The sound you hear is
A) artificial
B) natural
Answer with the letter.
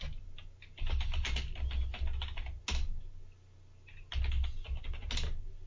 B